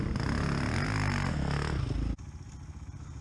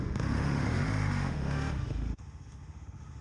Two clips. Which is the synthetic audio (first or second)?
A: second